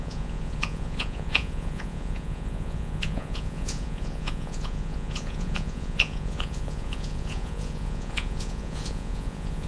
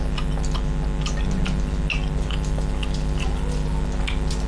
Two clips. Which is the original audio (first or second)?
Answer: second